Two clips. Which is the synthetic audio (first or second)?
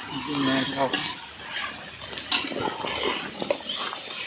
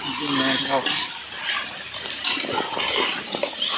second